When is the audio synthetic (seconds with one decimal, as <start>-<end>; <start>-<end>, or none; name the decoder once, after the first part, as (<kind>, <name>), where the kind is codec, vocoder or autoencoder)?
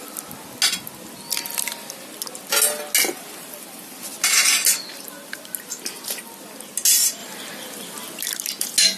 none